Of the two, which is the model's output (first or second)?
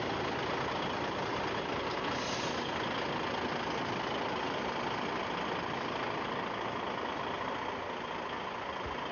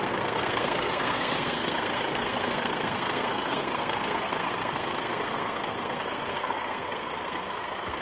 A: second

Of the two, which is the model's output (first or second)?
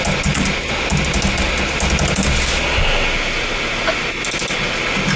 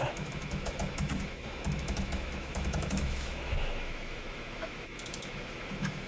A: second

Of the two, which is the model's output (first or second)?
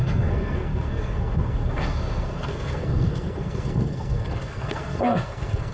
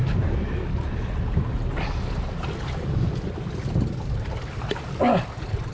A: first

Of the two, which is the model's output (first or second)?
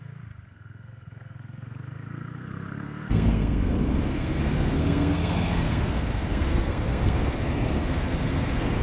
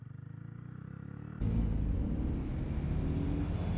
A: first